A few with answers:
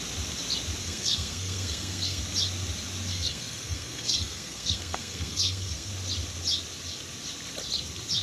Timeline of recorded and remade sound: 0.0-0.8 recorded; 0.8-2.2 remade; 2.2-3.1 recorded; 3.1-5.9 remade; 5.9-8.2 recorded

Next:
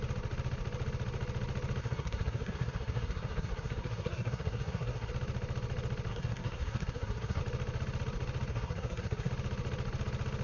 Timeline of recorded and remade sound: 0.0-1.8 recorded; 1.8-5.1 remade; 5.1-6.1 recorded; 6.1-7.4 remade; 7.4-8.5 recorded; 8.5-9.3 remade; 9.3-10.4 recorded

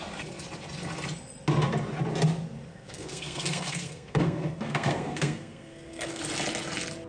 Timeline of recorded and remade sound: 0.0-2.7 recorded; 2.7-6.2 remade; 6.2-7.1 recorded